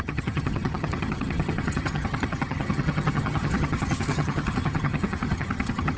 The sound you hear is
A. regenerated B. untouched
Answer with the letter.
A